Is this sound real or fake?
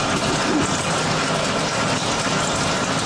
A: real